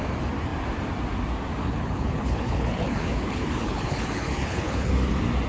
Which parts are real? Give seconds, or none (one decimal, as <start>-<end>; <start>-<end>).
0.0-1.6; 4.9-5.5